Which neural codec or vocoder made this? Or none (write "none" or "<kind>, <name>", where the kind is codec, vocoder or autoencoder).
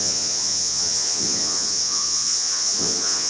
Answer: vocoder, Vocos